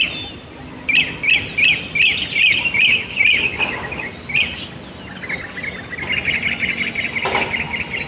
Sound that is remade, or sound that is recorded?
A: recorded